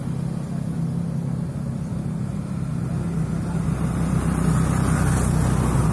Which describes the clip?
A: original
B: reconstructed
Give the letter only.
A